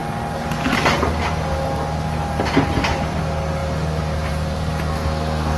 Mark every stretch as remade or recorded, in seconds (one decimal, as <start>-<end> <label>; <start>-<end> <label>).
0.0-4.9 recorded; 4.9-5.6 remade